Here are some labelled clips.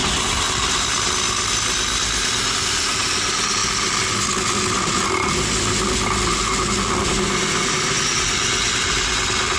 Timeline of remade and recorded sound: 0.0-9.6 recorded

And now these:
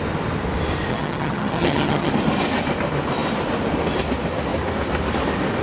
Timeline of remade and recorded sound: 0.0-0.9 recorded; 0.9-2.1 remade; 2.1-5.6 recorded